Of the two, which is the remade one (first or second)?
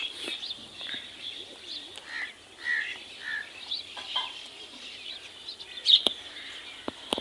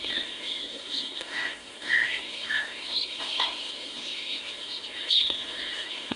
second